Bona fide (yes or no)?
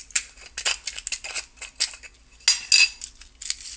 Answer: yes